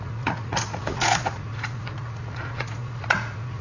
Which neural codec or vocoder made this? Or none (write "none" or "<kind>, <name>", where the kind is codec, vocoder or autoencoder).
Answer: vocoder, Vocos